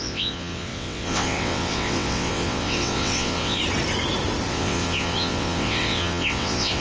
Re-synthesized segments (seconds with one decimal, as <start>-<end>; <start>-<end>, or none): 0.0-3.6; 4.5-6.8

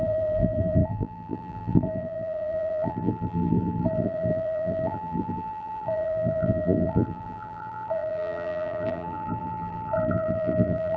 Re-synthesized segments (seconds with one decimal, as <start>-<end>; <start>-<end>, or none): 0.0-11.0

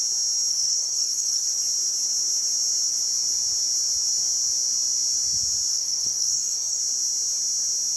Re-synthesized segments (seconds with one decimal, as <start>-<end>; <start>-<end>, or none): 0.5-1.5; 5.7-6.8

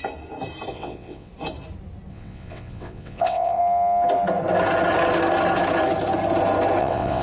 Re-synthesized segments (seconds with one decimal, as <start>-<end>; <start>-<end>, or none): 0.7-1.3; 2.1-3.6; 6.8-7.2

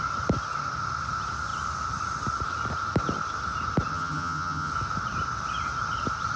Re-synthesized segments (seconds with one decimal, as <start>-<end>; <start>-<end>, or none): 3.9-4.7